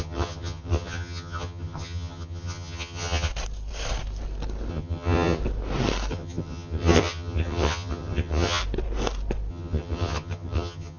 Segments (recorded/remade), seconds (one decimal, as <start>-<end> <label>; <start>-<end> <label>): 0.0-3.3 remade; 3.3-4.7 recorded; 4.7-5.4 remade; 5.4-6.1 recorded; 6.1-8.6 remade; 8.6-9.5 recorded; 9.5-11.0 remade